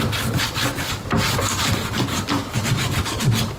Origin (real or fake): real